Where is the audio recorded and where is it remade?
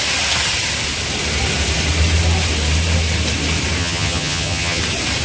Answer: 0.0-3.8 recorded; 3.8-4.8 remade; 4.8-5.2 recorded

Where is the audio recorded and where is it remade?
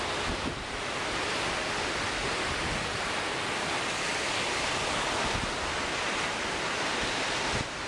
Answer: 0.0-2.9 recorded; 2.9-5.5 remade; 5.5-7.9 recorded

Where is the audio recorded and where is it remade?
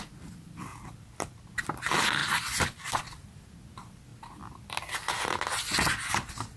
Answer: 0.0-6.6 recorded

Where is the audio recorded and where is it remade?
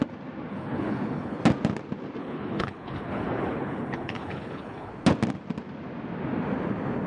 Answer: 0.0-0.5 recorded; 0.5-1.4 remade; 1.4-2.2 recorded; 2.2-4.9 remade; 4.9-7.1 recorded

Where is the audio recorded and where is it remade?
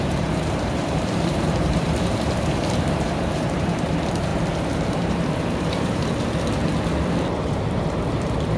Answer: 0.0-4.3 remade; 4.3-4.9 recorded; 4.9-6.0 remade; 6.0-7.4 recorded; 7.4-8.6 remade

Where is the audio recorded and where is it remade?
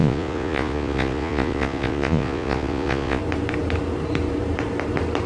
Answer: 0.0-3.2 remade; 3.2-5.3 recorded